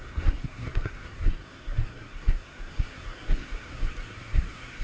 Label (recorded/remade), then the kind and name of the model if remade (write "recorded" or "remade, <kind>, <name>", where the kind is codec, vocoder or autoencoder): remade, codec, SNAC